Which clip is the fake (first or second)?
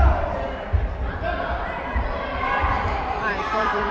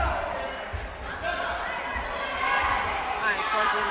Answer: first